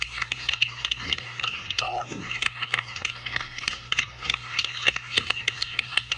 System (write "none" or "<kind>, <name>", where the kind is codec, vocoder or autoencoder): codec, SNAC